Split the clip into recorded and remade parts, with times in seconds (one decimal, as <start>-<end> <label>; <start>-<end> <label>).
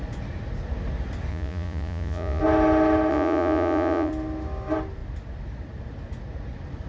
0.0-1.3 recorded; 1.3-2.4 remade; 2.4-3.1 recorded; 3.1-4.1 remade; 4.1-6.9 recorded